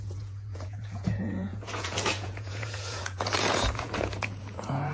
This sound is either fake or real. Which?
fake